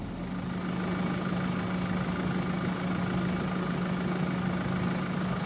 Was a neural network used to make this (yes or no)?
no